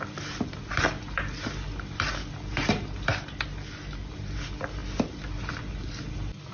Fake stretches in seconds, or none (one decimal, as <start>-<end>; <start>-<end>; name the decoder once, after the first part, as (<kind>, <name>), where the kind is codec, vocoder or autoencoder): none